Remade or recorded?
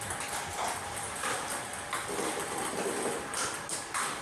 recorded